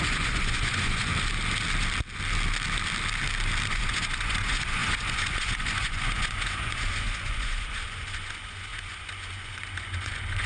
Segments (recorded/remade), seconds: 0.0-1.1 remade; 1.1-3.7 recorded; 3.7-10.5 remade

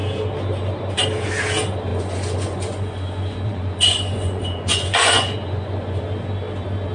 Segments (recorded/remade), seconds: 0.0-1.9 recorded; 1.9-6.0 remade; 6.0-6.9 recorded

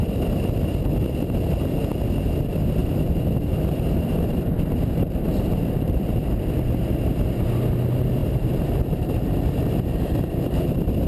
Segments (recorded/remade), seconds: 0.0-2.8 recorded; 2.8-6.2 remade; 6.2-8.2 recorded; 8.2-9.9 remade; 9.9-11.1 recorded